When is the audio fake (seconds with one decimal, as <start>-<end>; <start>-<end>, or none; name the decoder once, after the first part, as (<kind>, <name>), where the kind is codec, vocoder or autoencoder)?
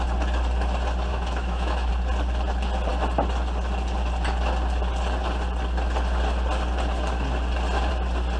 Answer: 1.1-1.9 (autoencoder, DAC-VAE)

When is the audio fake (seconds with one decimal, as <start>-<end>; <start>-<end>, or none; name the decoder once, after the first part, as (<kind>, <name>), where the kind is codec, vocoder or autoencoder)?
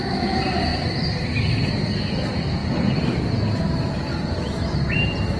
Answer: 0.7-2.1 (vocoder, BigVGAN v2)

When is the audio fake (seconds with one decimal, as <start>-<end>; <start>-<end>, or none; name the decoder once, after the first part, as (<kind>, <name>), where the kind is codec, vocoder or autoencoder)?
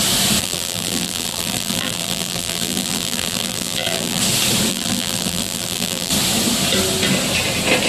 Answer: 0.4-4.2 (vocoder, BigVGAN v2); 4.7-6.1